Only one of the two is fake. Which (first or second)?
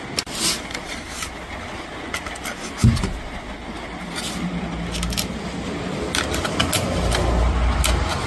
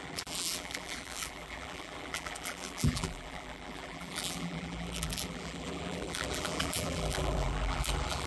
second